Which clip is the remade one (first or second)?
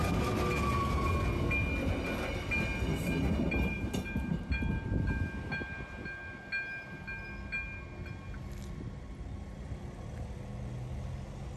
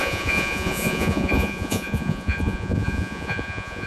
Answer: second